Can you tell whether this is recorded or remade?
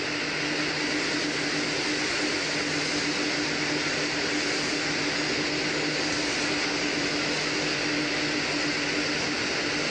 recorded